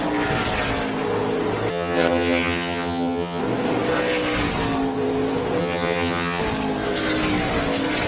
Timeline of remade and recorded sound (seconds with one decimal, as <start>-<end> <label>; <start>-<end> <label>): 0.0-1.7 recorded; 1.7-3.4 remade; 3.4-5.6 recorded; 5.6-6.4 remade; 6.4-8.1 recorded

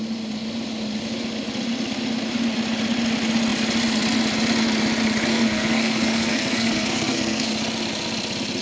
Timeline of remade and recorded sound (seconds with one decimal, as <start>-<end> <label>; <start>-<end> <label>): 0.0-5.3 recorded; 5.3-7.5 remade; 7.5-8.6 recorded

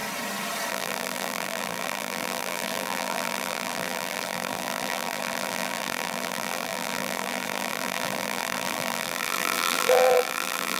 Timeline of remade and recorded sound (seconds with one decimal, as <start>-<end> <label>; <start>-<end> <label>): 0.0-0.7 recorded; 0.7-10.8 remade

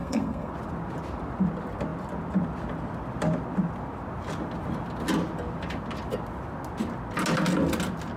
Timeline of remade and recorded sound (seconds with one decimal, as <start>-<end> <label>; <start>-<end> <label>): 0.0-0.5 remade; 0.5-8.2 recorded

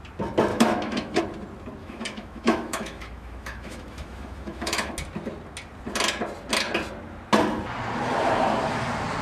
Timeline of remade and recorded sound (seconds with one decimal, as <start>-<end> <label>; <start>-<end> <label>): 0.0-0.5 recorded; 0.5-1.2 remade; 1.2-1.8 recorded; 1.8-4.9 remade; 4.9-9.2 recorded